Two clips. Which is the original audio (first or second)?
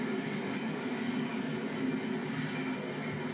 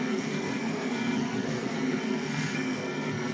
first